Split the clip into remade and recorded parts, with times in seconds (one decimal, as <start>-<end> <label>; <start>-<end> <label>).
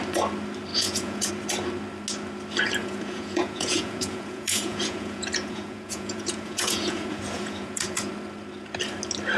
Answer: 0.0-0.7 recorded; 0.7-1.3 remade; 1.3-2.8 recorded; 2.8-8.1 remade; 8.1-9.4 recorded